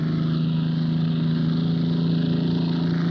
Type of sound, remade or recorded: recorded